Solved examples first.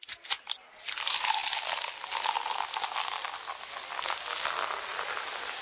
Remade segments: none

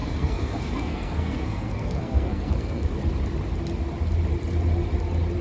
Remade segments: 0.0-2.9 (codec, SNAC)

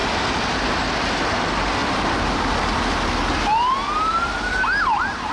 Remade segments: none

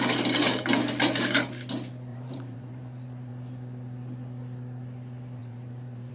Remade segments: 2.1-3.3 (vocoder, BigVGAN v2); 5.4-6.1

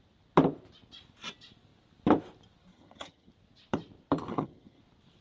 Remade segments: 2.7-3.3 (vocoder, HiFi-GAN); 4.3-4.8

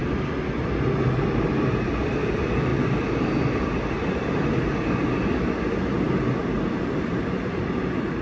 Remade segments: 1.4-2.7 (vocoder, BigVGAN v2); 6.8-8.2